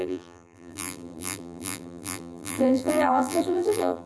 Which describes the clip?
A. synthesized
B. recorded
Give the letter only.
A